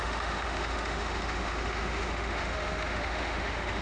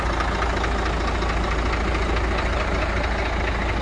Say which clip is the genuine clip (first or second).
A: second